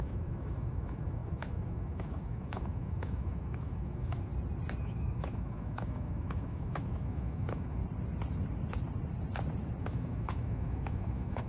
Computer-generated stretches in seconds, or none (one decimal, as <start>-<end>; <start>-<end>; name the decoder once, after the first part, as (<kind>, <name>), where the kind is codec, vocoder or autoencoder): 0.0-4.3 (autoencoder, DAC-VAE); 4.8-7.8; 9.8-11.5